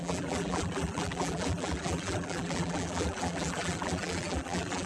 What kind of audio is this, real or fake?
fake